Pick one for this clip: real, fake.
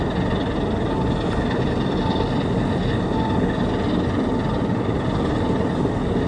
real